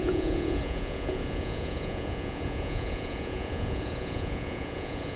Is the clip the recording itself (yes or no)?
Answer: no